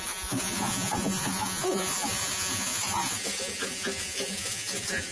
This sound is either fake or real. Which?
fake